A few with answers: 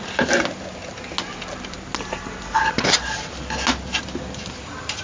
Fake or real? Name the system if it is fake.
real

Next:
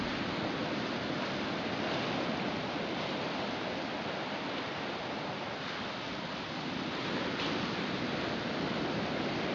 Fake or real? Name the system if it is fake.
real